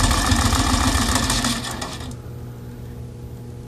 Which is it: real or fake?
real